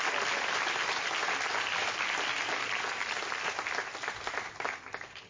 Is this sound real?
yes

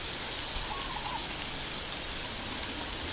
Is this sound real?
yes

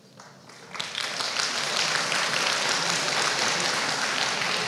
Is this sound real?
yes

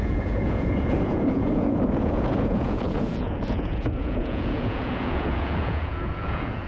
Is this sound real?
no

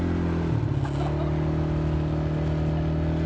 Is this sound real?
yes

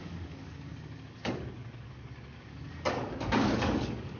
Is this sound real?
no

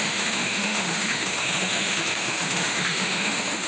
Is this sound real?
no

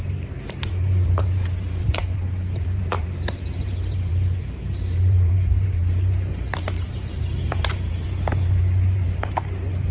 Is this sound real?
no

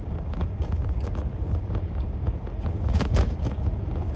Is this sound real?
no